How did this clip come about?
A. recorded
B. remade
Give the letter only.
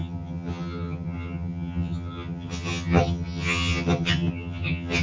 B